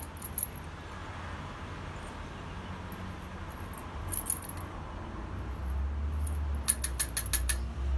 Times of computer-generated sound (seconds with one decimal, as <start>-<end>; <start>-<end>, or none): none

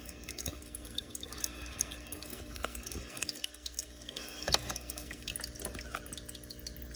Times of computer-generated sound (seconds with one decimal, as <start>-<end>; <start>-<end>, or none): 0.0-5.3

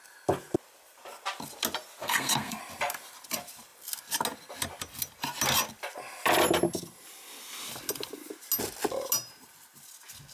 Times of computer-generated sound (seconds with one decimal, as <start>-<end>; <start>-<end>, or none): 2.0-2.6

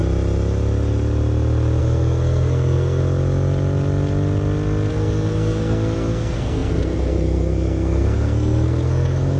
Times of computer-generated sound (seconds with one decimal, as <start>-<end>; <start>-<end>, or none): 1.8-3.0; 4.9-9.4

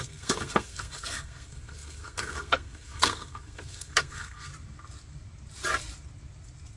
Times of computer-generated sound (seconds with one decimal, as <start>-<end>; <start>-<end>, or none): 0.0-4.5